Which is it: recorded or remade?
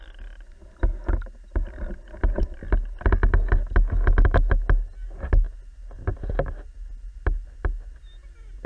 recorded